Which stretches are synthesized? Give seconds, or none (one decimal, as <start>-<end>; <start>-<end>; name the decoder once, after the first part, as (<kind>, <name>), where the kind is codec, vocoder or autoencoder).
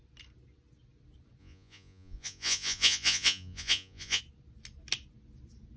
1.4-4.2 (vocoder, Vocos)